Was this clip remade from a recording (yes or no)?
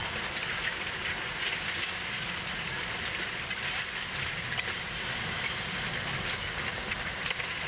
no